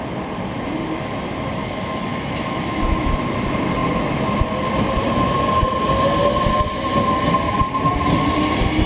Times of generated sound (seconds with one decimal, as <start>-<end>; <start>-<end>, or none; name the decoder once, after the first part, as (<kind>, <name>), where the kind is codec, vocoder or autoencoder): 1.6-3.1 (autoencoder, DAC-VAE)